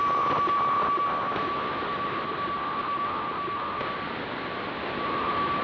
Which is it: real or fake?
real